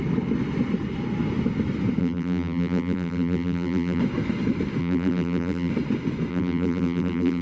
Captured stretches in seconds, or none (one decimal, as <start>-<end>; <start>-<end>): 0.0-2.0; 4.0-4.8; 5.7-6.3